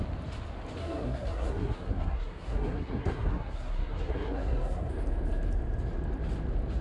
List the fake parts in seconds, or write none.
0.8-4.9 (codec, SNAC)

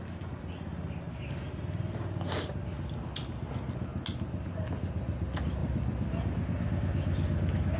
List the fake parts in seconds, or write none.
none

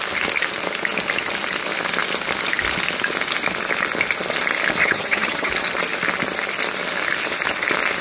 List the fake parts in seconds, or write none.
4.8-5.5 (vocoder, HiFi-GAN)

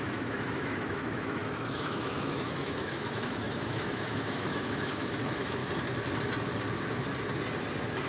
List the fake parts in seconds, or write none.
0.0-5.6 (autoencoder, DAC-VAE)

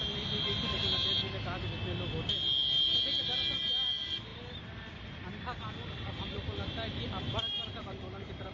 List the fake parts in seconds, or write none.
none